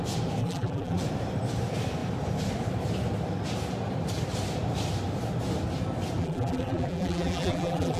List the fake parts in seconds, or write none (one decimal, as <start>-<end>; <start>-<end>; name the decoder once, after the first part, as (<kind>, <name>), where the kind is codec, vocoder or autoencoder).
0.4-1.0 (vocoder, BigVGAN v2); 6.2-8.0